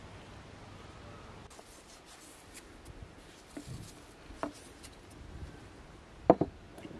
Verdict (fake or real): real